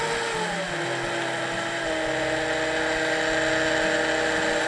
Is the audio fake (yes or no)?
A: no